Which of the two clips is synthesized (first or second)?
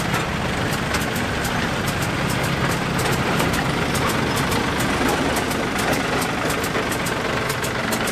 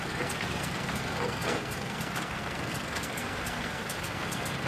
second